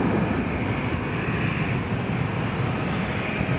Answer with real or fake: real